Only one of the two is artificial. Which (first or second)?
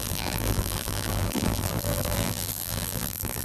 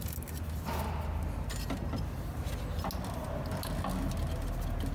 first